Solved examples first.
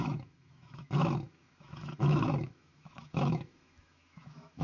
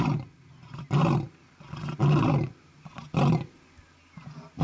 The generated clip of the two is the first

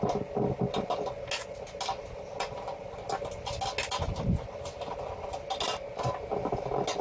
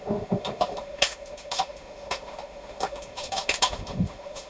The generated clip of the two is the second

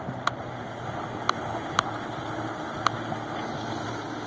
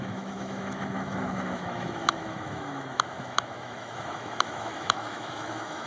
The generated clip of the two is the second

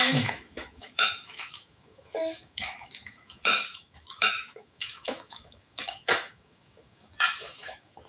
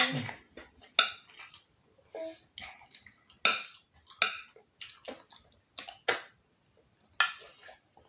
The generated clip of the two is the first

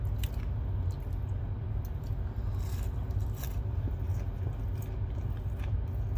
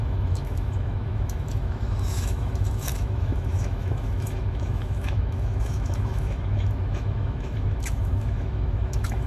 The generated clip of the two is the second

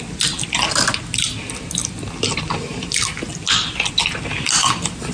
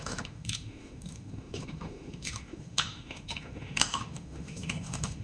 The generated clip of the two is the second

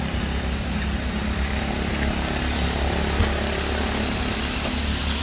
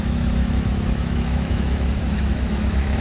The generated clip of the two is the second